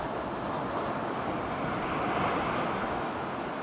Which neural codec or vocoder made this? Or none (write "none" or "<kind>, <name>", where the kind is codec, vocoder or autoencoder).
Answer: none